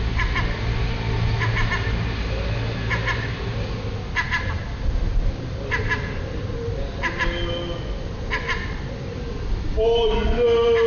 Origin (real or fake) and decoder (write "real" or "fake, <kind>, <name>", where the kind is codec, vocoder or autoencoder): real